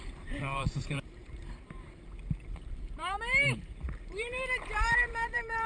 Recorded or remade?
remade